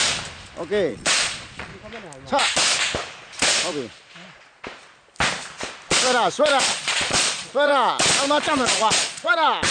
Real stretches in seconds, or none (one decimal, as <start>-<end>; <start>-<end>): 0.0-0.9; 1.7-6.6; 7.7-8.4